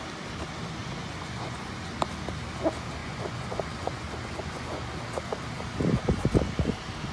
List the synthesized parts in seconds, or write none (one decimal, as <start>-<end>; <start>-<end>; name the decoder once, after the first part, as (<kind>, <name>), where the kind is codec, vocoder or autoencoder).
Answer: 0.8-1.9 (vocoder, Vocos); 3.0-4.9